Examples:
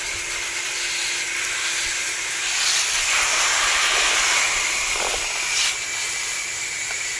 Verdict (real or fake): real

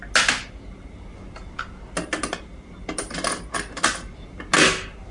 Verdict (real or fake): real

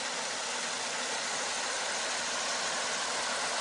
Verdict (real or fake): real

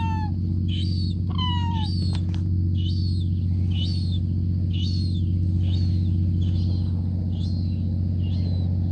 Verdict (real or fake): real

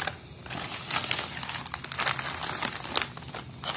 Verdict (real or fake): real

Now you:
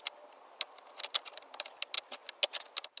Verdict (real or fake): real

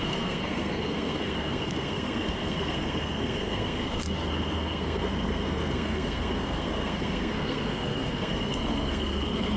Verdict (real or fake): fake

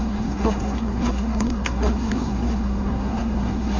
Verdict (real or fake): fake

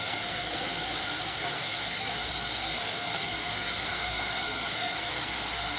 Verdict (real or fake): fake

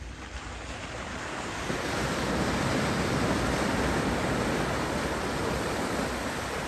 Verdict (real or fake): real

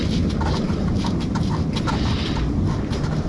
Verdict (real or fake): real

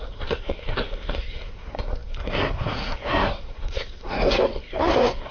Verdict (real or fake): fake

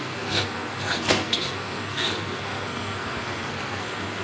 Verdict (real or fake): fake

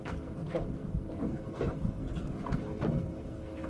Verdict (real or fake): fake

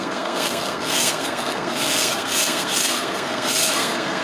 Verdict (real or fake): fake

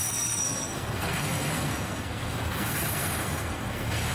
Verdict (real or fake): fake